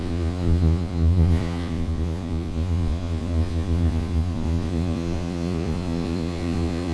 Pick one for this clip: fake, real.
fake